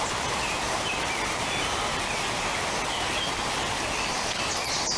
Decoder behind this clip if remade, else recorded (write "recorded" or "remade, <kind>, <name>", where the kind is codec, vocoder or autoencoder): recorded